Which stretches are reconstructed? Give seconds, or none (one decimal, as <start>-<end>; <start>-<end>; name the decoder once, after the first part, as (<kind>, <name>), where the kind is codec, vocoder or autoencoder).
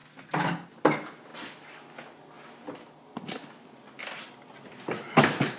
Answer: none